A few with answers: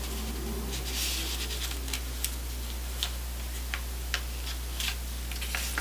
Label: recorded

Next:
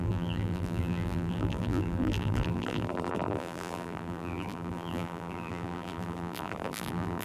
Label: remade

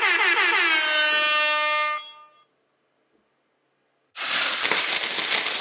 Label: recorded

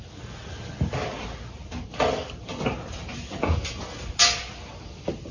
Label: recorded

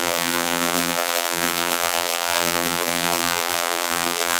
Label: remade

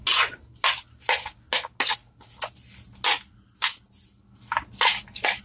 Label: recorded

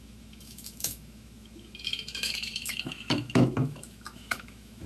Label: remade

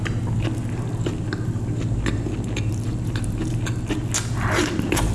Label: recorded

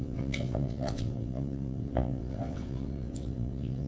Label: remade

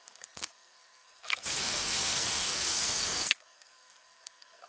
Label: remade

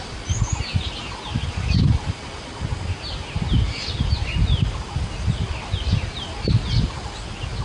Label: recorded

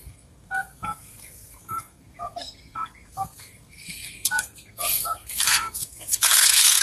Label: remade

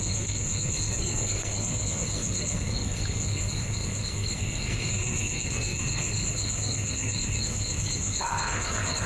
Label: remade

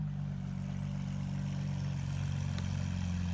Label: recorded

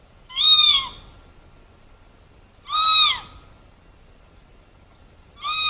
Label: recorded